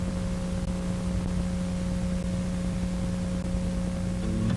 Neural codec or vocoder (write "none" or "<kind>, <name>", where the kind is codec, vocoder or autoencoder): none